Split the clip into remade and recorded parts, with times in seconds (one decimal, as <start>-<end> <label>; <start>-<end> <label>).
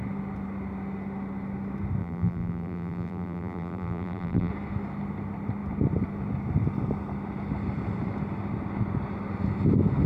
0.0-2.0 recorded; 2.0-4.5 remade; 4.5-10.1 recorded